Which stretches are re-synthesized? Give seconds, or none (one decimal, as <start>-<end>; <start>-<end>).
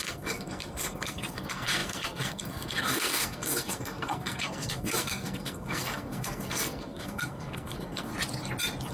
0.0-8.1